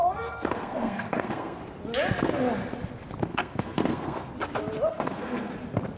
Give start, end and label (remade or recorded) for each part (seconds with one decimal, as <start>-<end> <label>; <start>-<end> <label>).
0.0-1.6 remade; 1.6-3.3 recorded; 3.3-4.3 remade; 4.3-4.9 recorded; 4.9-5.5 remade; 5.5-6.0 recorded